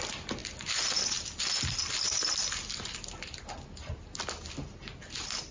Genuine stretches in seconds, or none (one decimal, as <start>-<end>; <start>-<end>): 0.0-5.5